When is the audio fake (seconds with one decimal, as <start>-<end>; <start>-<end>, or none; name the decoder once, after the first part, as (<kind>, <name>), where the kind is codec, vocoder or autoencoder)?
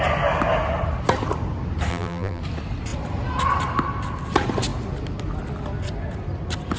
1.9-2.4 (vocoder, BigVGAN v2)